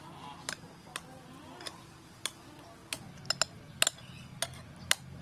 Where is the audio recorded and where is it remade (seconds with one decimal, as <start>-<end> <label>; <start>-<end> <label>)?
0.0-5.2 recorded

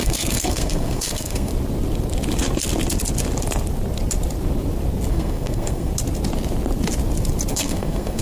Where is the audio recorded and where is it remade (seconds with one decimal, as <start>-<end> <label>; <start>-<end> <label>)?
0.0-1.5 remade; 1.5-5.1 recorded; 5.1-5.9 remade; 5.9-7.5 recorded; 7.5-8.2 remade

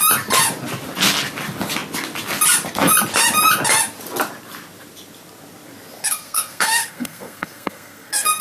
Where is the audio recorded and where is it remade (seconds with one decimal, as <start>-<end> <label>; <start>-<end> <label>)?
0.0-6.0 recorded; 6.0-8.4 remade

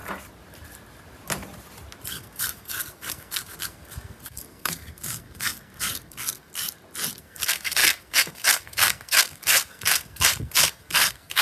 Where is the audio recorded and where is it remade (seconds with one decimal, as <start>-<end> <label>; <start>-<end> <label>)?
0.0-2.1 recorded; 2.1-6.6 remade; 6.6-7.2 recorded; 7.2-11.4 remade

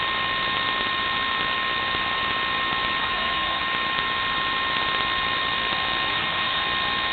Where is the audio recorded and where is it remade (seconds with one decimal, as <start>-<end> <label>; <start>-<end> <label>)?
0.0-3.0 recorded; 3.0-3.6 remade; 3.6-6.1 recorded; 6.1-6.6 remade; 6.6-7.1 recorded